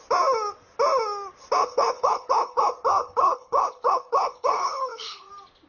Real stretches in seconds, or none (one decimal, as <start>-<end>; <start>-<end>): 0.0-1.6; 2.6-3.0; 5.3-5.7